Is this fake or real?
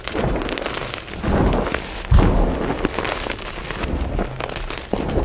real